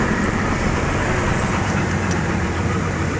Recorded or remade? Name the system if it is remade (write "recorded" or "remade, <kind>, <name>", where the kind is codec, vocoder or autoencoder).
remade, vocoder, BigVGAN v2